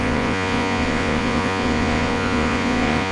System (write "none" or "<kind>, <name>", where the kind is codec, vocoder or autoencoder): vocoder, Vocos